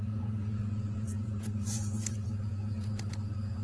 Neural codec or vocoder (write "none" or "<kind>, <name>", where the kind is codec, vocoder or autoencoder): vocoder, Vocos